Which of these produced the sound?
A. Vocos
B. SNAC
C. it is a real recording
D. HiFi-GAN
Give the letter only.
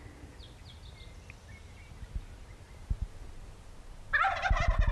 C